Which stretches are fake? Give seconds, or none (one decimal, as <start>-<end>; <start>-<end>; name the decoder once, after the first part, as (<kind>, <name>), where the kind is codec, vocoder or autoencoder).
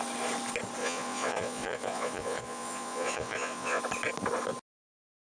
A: 0.8-3.8 (vocoder, Vocos)